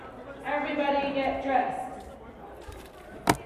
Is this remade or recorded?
recorded